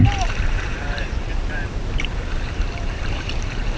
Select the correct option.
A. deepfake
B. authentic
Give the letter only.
A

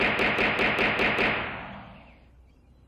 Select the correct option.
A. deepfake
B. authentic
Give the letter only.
B